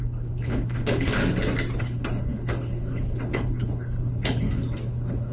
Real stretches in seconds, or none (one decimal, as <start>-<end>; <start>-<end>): 1.2-1.8